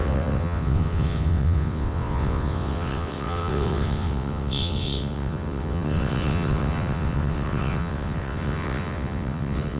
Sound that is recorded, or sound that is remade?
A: remade